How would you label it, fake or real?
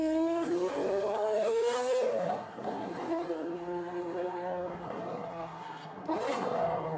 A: fake